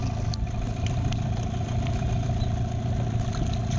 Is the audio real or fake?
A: real